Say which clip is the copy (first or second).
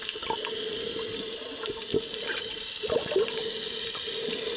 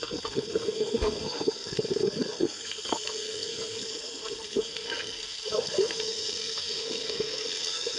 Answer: second